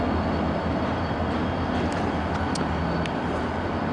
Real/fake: real